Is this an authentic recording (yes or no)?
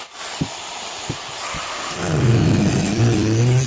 yes